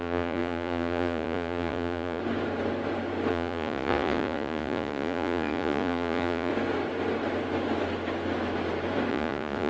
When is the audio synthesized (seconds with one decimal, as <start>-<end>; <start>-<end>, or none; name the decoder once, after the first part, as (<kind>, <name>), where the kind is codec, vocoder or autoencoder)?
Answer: 0.0-2.2 (vocoder, Vocos); 3.3-6.5; 9.1-9.7